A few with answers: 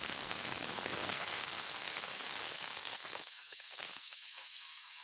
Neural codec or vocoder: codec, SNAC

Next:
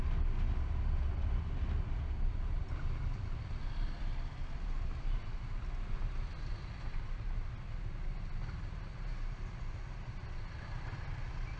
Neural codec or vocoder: none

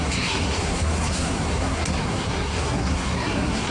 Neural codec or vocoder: codec, SNAC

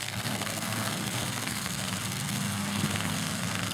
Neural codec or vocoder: codec, SNAC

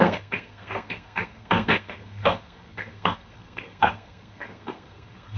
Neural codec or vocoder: codec, SNAC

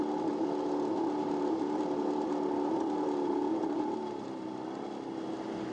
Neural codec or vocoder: none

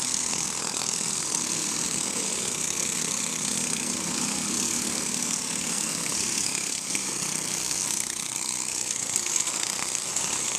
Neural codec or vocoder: codec, SNAC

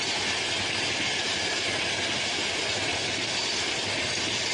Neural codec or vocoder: none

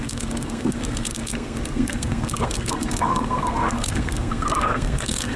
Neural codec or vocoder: codec, SNAC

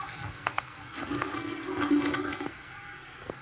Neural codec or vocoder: codec, SNAC